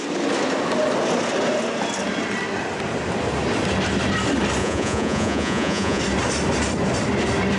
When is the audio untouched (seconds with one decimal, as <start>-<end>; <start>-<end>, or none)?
0.0-4.6; 6.0-7.6